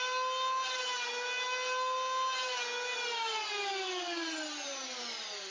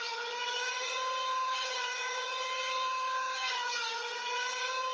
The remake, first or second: second